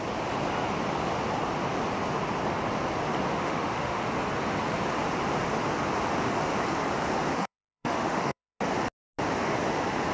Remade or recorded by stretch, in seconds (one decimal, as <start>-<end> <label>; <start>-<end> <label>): 0.0-3.3 recorded; 3.3-4.0 remade; 4.0-7.3 recorded; 7.3-8.6 remade; 8.6-10.1 recorded